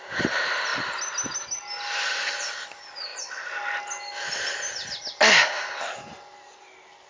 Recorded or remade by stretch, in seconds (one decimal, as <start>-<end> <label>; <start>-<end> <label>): 0.0-7.1 recorded